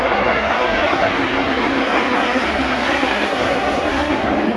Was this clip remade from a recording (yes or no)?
yes